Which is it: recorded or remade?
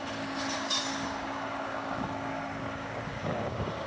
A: remade